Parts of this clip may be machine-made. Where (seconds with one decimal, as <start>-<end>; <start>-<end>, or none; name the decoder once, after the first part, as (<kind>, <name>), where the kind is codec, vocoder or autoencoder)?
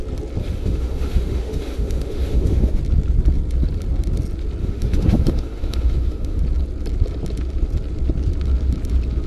0.4-2.8 (autoencoder, DAC-VAE); 4.6-6.4